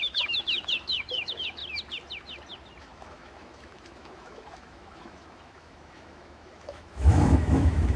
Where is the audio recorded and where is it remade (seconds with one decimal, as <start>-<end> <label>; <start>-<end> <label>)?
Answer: 0.0-1.6 remade; 1.6-2.8 recorded; 2.8-8.0 remade